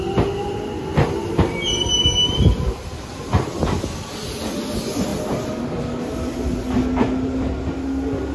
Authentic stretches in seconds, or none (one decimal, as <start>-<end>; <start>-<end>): 0.0-8.3